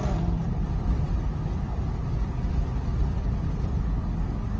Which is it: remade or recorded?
recorded